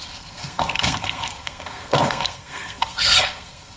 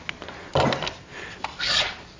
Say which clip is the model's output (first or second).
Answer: first